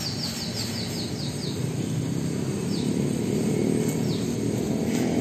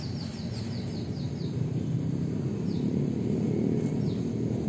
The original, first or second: first